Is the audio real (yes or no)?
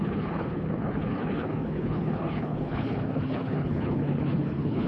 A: no